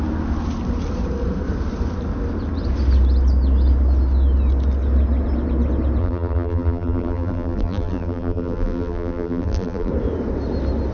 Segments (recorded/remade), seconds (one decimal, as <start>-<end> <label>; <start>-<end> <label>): 0.0-6.0 recorded; 6.0-9.9 remade; 9.9-10.9 recorded